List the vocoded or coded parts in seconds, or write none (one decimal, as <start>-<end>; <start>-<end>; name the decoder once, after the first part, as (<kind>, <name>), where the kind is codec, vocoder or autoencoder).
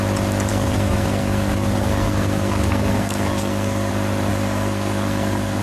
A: 0.5-3.9 (codec, SNAC); 4.3-5.6